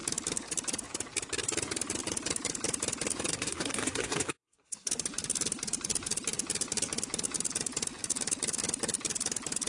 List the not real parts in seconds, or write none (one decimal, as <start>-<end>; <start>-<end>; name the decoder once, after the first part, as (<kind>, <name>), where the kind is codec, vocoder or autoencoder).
3.3-4.9 (codec, SNAC)

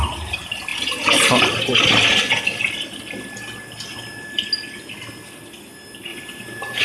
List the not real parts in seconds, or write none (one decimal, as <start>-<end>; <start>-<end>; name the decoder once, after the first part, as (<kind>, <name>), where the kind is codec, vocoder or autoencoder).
6.1-6.8 (vocoder, BigVGAN v2)

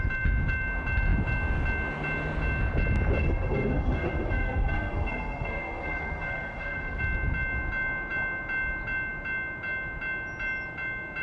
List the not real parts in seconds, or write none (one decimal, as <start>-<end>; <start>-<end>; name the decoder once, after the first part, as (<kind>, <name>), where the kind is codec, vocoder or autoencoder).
3.2-7.0 (codec, SNAC)

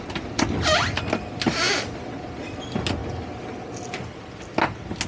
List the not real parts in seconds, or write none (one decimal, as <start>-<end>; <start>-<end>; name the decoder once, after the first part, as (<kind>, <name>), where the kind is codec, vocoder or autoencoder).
none

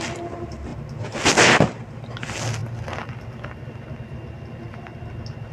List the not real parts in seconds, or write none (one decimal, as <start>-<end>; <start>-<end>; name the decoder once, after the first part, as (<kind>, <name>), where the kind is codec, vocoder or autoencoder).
none

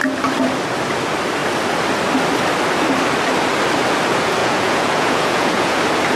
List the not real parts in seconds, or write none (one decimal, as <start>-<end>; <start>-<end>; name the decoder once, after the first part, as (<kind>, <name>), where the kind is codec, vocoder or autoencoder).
4.4-5.8 (vocoder, Vocos)

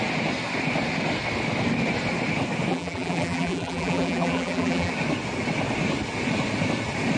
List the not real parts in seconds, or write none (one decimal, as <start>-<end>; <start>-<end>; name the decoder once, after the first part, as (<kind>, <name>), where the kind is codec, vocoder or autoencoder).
2.7-4.9 (vocoder, BigVGAN v2)

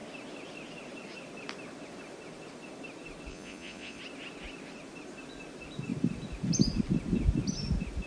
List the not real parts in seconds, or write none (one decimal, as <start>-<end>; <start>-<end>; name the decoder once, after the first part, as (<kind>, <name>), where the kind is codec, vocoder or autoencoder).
3.3-4.0 (vocoder, Vocos)